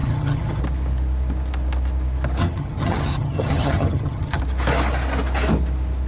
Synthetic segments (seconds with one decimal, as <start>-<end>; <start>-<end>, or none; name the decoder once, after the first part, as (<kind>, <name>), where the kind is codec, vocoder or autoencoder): 0.0-0.6 (vocoder, HiFi-GAN); 2.4-4.4